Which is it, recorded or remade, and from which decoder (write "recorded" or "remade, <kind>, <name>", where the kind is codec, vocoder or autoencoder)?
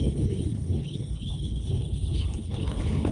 remade, codec, HILCodec